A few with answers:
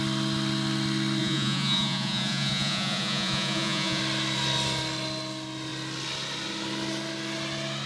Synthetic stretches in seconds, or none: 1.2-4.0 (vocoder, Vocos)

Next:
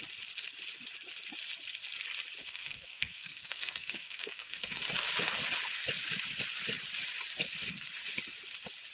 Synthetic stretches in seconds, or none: 2.4-4.7 (codec, SNAC)

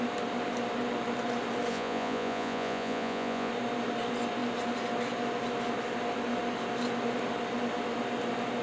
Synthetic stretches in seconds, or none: 1.7-3.5 (vocoder, Vocos)